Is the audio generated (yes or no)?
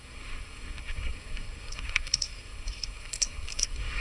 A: yes